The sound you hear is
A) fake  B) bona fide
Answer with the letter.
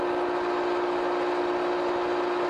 B